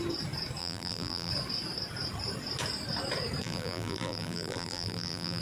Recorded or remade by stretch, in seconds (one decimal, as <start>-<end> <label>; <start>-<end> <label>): 0.0-0.6 recorded; 0.6-1.3 remade; 1.3-3.4 recorded; 3.4-5.4 remade